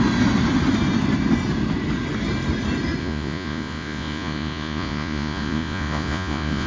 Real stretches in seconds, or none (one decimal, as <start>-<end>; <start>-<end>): 0.0-3.0

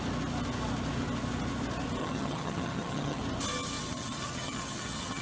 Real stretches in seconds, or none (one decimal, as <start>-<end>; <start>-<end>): 0.0-2.0; 3.2-3.9

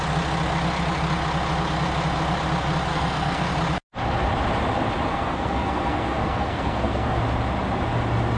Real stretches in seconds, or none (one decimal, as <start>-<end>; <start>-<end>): 0.0-2.9; 3.5-5.1; 7.2-8.4